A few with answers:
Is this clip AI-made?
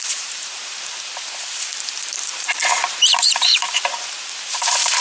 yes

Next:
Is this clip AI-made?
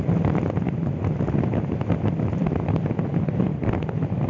no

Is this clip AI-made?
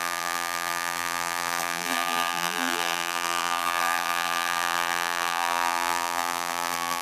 yes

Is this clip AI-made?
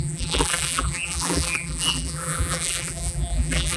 yes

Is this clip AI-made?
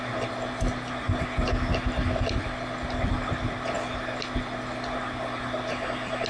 no